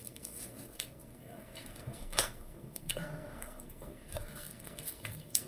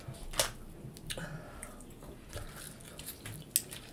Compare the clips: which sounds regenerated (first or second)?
first